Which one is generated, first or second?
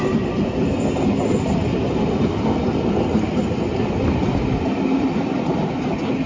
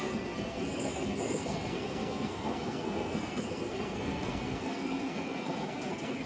second